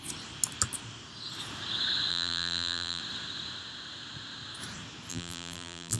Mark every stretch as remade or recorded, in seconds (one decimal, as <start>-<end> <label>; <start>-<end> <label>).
0.0-2.1 recorded; 2.1-3.0 remade; 3.0-5.1 recorded; 5.1-6.0 remade